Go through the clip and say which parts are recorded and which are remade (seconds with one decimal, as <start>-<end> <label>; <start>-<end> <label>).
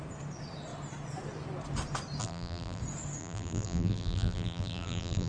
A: 0.0-2.2 recorded; 2.2-2.8 remade; 2.8-3.2 recorded; 3.2-5.3 remade